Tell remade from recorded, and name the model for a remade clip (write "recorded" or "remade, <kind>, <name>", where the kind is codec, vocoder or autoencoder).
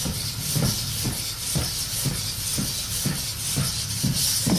recorded